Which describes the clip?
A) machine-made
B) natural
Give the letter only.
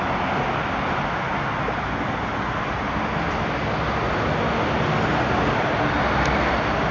B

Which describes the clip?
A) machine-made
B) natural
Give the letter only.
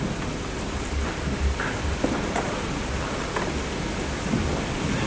B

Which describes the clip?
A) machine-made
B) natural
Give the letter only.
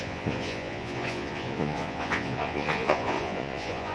A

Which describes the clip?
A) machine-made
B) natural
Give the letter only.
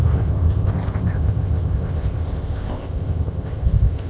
A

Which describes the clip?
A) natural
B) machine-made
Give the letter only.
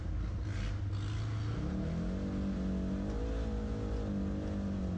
A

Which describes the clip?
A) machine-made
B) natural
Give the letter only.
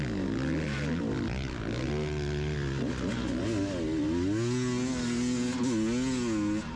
B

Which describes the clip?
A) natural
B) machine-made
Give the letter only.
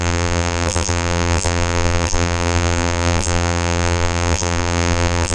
B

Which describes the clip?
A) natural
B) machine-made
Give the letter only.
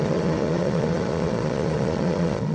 B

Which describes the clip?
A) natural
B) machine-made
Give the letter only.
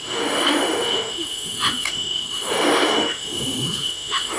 B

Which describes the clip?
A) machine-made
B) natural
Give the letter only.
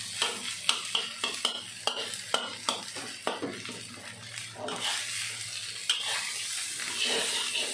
B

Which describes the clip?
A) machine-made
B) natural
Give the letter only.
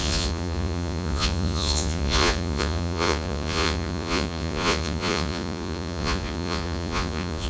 A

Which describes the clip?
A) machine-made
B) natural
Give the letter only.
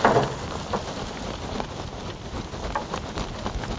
B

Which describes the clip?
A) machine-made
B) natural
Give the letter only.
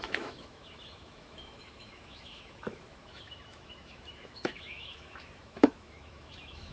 A